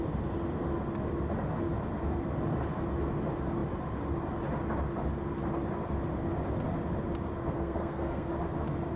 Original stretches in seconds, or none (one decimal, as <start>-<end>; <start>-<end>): 0.0-7.4; 8.3-9.0